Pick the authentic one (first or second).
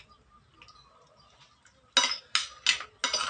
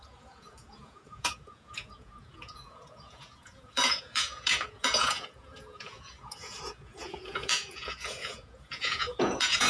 first